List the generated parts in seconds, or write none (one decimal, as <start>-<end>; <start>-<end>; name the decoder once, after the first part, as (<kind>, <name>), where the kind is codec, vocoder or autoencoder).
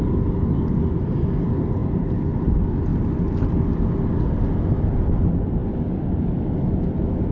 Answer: none